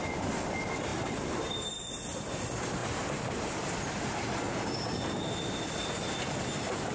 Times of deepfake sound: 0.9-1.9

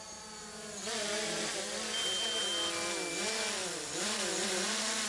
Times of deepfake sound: 3.6-5.1

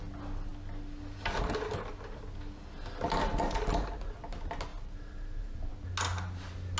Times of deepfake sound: 4.7-5.7

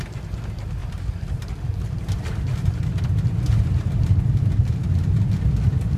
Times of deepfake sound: 0.8-2.8

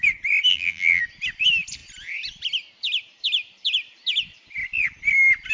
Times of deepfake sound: 0.5-1.0